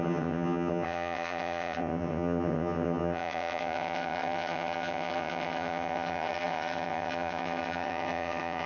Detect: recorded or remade remade